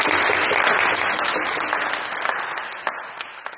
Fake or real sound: real